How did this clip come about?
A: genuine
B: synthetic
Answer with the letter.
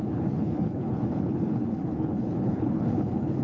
B